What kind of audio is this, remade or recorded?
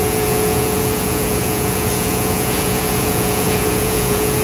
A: remade